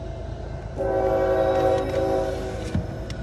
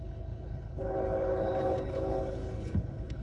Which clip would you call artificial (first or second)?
second